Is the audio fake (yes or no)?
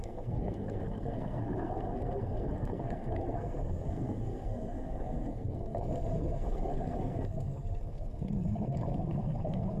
yes